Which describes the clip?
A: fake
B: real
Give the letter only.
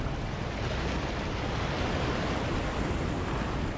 B